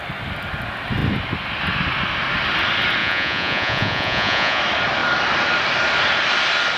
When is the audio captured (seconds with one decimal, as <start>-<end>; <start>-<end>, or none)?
0.0-3.0; 4.6-6.8